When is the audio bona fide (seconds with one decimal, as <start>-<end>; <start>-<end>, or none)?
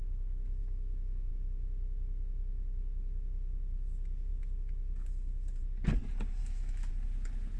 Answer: 0.0-0.6; 1.3-6.4; 6.9-7.6